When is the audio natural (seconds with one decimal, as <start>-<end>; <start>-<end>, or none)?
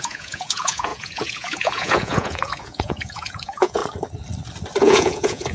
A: 3.8-4.8